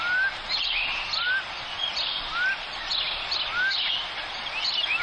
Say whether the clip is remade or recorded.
recorded